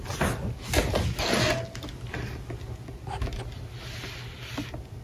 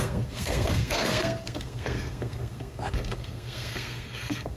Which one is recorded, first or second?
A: first